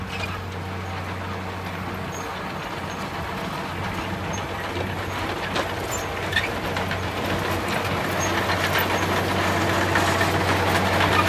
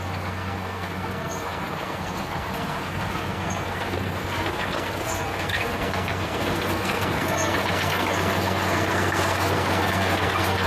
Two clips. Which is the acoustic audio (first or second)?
first